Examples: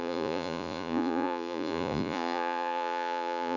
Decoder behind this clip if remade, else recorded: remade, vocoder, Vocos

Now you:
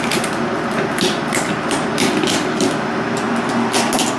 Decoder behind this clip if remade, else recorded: recorded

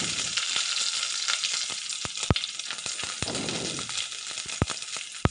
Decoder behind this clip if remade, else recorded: recorded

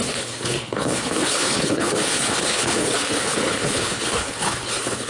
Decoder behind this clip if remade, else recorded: remade, codec, HILCodec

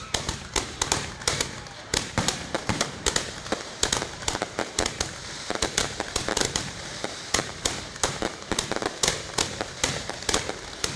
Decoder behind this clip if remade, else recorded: remade, vocoder, BigVGAN v2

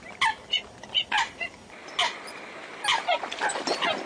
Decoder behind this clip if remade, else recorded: recorded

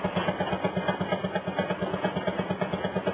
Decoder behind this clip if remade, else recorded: recorded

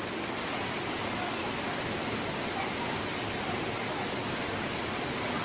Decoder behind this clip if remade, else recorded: recorded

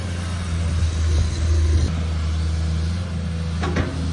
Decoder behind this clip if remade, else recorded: recorded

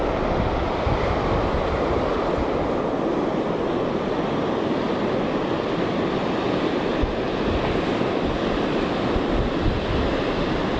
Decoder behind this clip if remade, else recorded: recorded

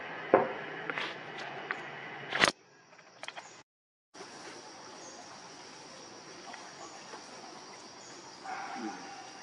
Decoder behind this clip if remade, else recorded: remade, vocoder, Vocos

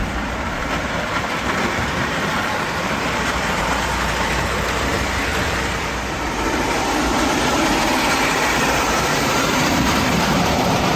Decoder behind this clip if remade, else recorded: remade, vocoder, BigVGAN v2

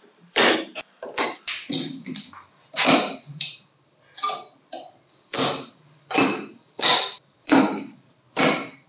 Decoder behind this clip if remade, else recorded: remade, vocoder, BigVGAN v2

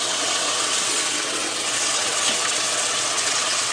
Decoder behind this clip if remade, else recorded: remade, vocoder, WaveNeXt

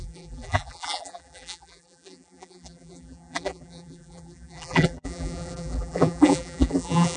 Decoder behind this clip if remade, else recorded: remade, vocoder, BigVGAN v2